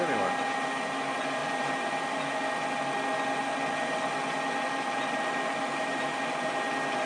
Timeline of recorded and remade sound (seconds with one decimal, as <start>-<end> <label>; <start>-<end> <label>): 0.0-1.4 recorded; 1.4-1.9 remade; 1.9-7.1 recorded